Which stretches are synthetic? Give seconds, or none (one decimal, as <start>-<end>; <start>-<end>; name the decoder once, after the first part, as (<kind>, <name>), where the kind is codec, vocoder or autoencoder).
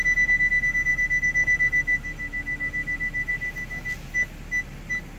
0.9-3.3 (autoencoder, DAC-VAE)